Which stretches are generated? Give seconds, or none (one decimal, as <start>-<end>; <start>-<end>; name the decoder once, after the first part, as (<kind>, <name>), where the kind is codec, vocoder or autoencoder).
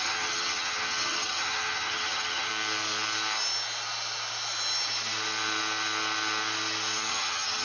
0.0-2.5 (vocoder, HiFi-GAN); 7.1-7.6